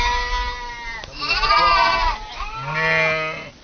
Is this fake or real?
real